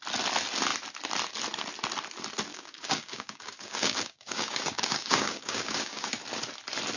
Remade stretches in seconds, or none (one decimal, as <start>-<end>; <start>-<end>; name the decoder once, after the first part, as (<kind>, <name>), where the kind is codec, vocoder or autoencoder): 2.5-6.2 (codec, DAC)